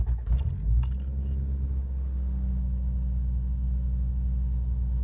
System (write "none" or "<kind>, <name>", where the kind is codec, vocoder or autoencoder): none